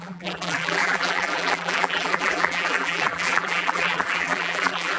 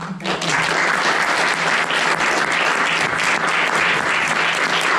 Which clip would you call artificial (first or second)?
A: first